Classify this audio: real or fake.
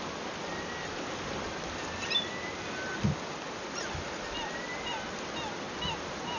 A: real